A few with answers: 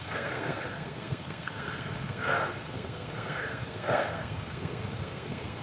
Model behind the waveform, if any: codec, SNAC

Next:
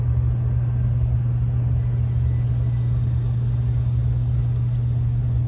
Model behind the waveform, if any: none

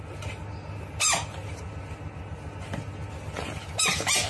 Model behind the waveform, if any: none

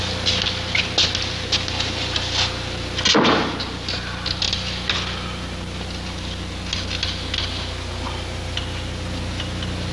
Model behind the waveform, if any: none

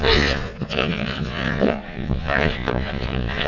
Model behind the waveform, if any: vocoder, Vocos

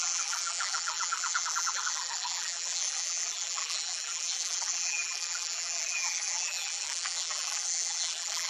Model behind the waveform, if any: vocoder, BigVGAN v2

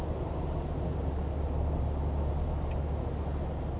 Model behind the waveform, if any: none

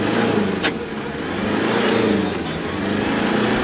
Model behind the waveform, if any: none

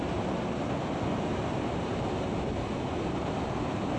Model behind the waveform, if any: none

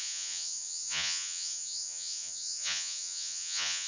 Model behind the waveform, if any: vocoder, Vocos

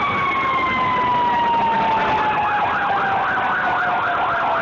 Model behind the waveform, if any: none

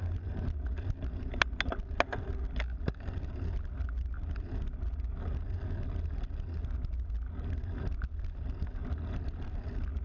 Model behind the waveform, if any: none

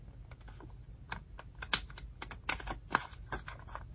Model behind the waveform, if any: none